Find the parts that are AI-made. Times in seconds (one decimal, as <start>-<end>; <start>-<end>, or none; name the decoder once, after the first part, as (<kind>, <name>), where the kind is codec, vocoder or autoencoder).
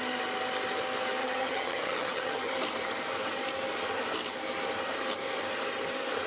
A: 1.2-2.5 (vocoder, HiFi-GAN)